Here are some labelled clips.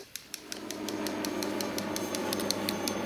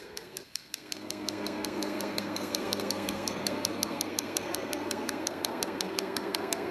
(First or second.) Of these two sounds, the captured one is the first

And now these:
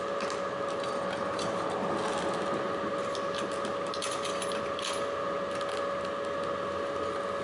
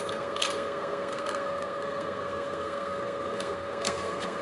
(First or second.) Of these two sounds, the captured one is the first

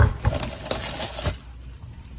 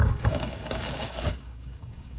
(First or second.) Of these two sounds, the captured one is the first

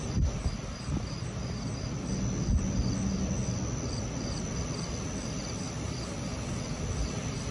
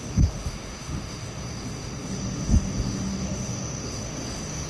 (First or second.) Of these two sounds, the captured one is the first